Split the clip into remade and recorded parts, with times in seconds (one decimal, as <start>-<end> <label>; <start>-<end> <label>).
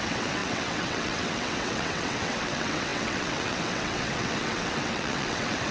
0.0-5.7 remade